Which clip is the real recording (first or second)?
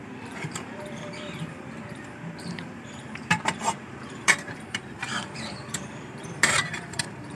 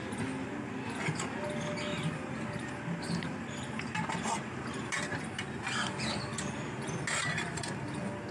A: second